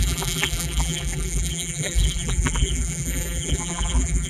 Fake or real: fake